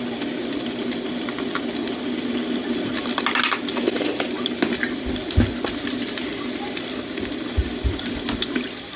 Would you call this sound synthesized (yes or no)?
no